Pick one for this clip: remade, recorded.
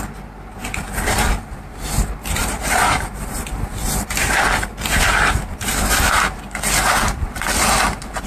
recorded